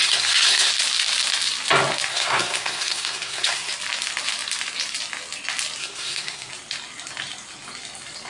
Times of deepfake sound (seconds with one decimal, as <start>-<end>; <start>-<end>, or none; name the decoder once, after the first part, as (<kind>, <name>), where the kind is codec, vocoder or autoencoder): 0.0-0.7 (codec, SNAC); 2.1-3.7; 5.8-6.5

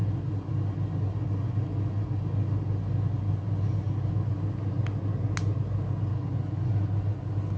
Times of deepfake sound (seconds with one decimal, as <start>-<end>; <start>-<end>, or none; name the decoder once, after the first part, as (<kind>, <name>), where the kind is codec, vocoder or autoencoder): none

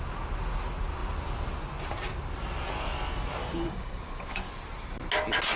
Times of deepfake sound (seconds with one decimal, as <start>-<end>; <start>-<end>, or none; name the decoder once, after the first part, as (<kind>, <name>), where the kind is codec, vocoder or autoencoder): 3.4-4.5 (codec, DAC)

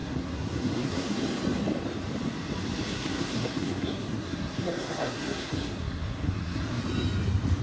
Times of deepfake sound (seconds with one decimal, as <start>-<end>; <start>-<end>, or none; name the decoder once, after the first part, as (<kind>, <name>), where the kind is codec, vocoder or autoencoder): 0.0-1.2 (codec, SNAC); 2.9-6.8

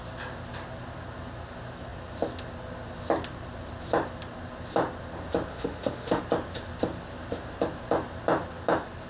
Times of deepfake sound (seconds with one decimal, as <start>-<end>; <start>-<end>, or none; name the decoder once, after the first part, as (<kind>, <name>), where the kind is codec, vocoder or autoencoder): 5.5-6.2 (autoencoder, DAC-VAE)

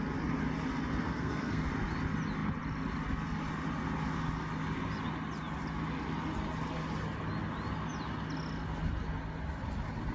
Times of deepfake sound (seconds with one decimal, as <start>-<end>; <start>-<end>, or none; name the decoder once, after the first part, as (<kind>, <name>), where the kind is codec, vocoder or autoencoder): 1.0-1.7 (codec, SNAC)